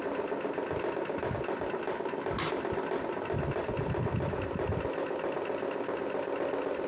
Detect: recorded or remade recorded